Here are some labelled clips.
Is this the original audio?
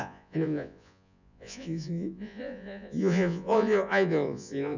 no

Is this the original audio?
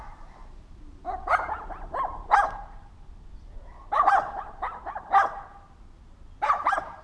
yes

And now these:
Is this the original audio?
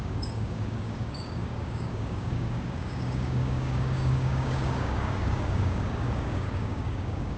no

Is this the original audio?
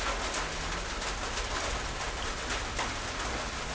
yes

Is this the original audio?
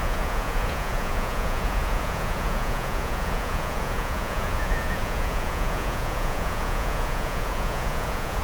no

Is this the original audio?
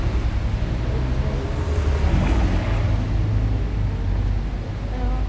yes